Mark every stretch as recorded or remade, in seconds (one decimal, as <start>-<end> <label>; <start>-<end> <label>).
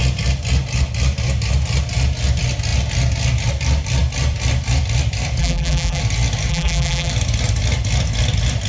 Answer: 0.0-5.4 recorded; 5.4-6.0 remade; 6.0-6.5 recorded; 6.5-7.1 remade; 7.1-8.7 recorded